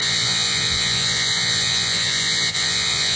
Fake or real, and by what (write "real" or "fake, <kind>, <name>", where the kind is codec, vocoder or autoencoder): fake, vocoder, Vocos